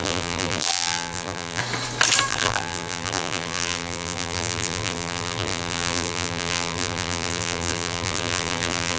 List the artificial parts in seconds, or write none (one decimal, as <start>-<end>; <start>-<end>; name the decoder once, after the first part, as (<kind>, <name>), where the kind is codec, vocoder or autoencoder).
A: 0.0-1.6 (vocoder, BigVGAN v2); 2.3-9.0